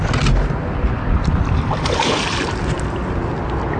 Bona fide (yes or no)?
yes